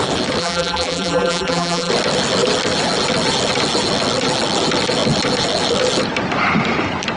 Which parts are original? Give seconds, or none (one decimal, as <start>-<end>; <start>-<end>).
0.0-0.4; 1.9-7.2